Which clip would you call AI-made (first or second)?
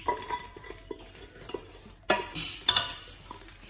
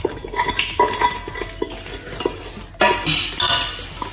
first